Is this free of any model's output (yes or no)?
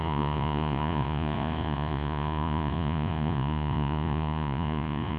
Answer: no